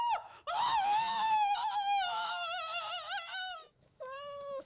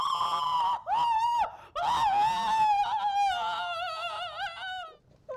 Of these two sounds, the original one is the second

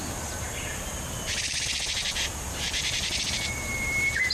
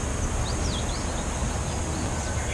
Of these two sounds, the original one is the second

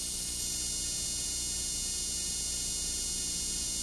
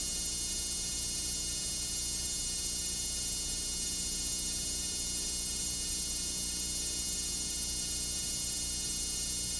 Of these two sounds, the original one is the first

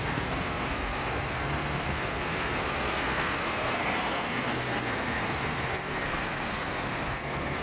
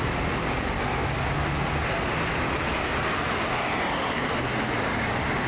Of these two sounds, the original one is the second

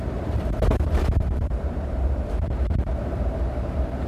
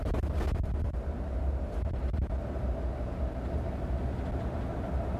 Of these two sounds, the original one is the second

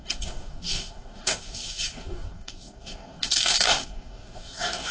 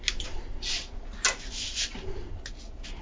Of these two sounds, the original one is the second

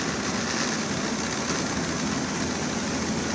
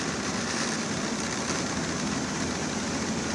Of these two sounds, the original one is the first